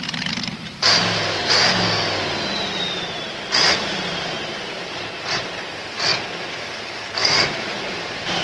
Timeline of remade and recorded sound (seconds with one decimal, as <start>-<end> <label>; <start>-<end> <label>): 0.0-1.4 remade; 1.4-2.4 recorded; 2.4-8.4 remade